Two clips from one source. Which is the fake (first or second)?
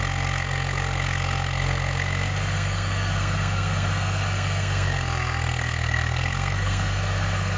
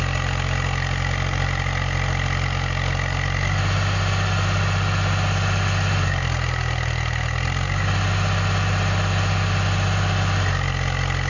first